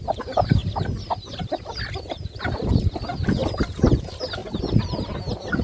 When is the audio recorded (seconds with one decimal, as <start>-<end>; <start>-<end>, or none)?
0.0-3.4; 3.9-5.6

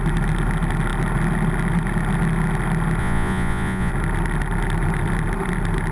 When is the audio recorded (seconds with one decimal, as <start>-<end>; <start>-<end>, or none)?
0.0-3.0; 3.9-5.9

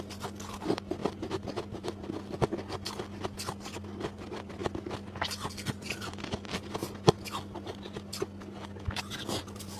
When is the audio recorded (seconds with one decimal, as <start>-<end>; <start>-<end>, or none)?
0.0-9.8

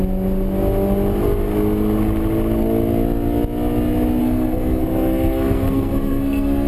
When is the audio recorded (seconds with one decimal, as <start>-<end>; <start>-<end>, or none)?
0.0-4.2

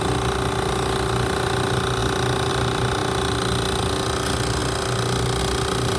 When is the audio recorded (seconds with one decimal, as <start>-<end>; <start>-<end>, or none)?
0.0-6.0